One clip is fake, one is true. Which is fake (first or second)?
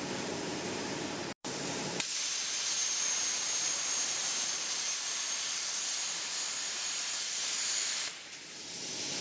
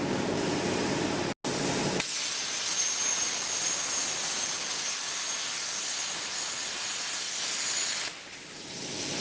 first